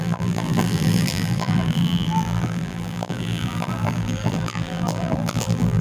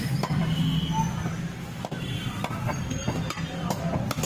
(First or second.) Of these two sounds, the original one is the second